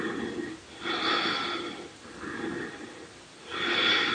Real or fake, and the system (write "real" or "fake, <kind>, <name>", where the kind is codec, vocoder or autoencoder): real